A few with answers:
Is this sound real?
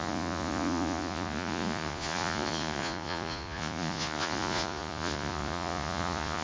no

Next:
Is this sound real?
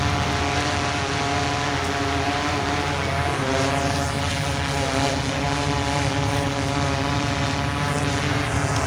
yes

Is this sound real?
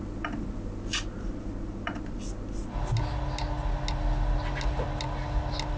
yes